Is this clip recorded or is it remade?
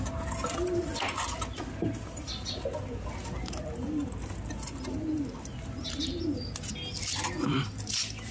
recorded